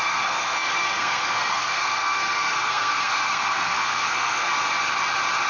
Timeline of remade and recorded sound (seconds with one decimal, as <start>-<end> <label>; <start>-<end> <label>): 0.0-4.5 remade; 4.5-5.5 recorded